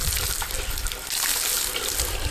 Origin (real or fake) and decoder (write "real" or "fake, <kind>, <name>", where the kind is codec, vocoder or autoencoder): real